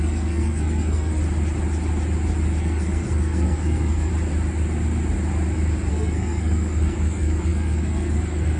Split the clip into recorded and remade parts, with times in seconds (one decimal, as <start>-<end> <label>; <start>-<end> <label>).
0.0-1.2 remade; 1.2-2.6 recorded; 2.6-4.1 remade; 4.1-5.9 recorded; 5.9-8.6 remade